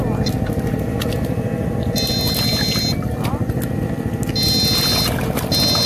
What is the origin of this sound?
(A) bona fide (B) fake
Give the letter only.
A